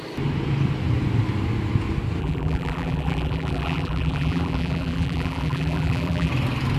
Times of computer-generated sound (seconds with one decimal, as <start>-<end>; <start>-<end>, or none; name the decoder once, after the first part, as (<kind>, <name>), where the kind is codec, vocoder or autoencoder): 2.2-6.3 (vocoder, BigVGAN v2)